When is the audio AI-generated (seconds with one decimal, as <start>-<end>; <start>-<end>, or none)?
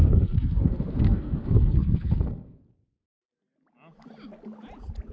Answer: 0.0-2.6